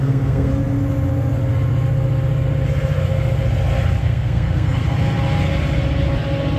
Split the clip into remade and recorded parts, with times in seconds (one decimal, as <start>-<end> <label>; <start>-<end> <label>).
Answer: 0.0-0.5 remade; 0.5-4.0 recorded; 4.0-4.8 remade; 4.8-6.6 recorded